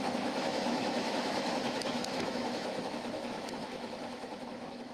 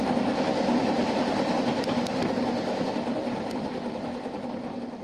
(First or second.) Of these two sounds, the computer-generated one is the first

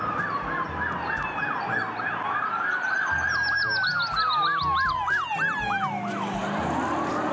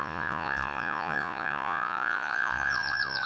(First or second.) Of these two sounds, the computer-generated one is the second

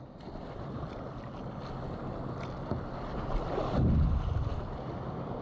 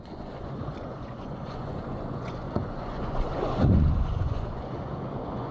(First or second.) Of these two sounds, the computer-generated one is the second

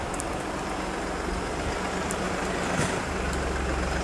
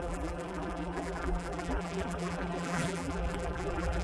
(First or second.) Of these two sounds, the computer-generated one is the second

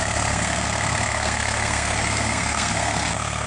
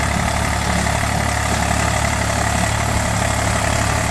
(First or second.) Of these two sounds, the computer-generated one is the first